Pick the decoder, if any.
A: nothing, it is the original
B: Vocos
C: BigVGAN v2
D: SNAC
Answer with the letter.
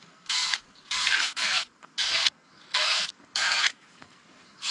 D